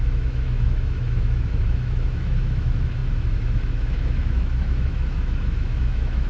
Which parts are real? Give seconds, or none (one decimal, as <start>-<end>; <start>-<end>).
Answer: none